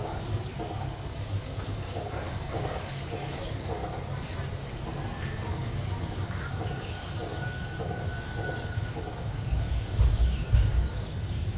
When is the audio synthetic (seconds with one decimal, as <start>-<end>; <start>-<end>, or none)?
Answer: 0.0-3.8; 5.0-11.6